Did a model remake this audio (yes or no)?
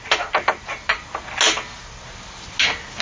no